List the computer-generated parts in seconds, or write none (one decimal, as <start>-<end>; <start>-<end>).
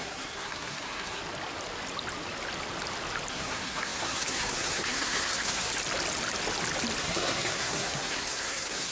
0.0-1.2; 3.3-5.7; 7.0-8.9